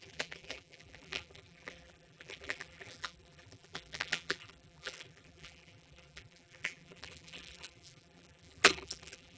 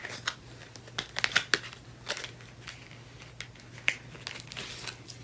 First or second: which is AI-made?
first